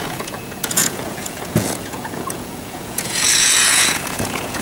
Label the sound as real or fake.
fake